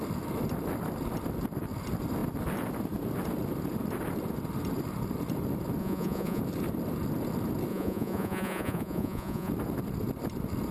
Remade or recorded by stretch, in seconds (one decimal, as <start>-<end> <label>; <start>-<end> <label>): 0.0-5.8 recorded; 5.8-6.4 remade; 6.4-7.7 recorded; 7.7-9.5 remade; 9.5-10.7 recorded